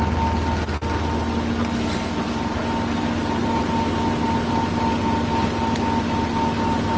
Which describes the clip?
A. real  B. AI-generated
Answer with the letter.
A